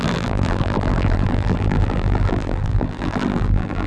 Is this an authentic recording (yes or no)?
no